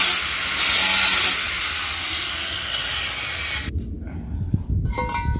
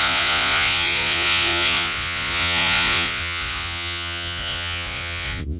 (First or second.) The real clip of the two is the first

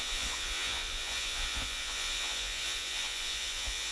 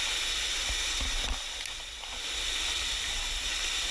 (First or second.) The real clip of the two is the second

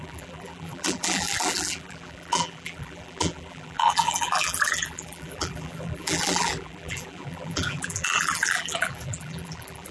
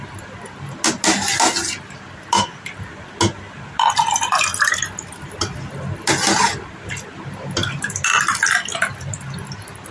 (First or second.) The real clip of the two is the second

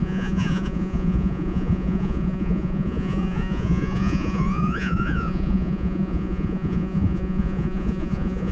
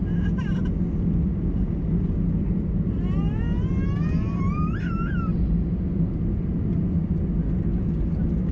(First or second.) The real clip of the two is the second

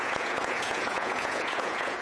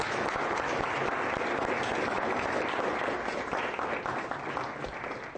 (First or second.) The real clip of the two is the second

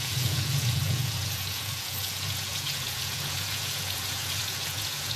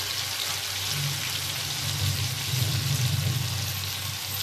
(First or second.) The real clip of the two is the second